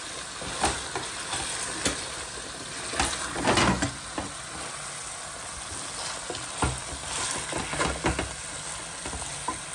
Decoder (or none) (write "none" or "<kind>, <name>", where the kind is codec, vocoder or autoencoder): none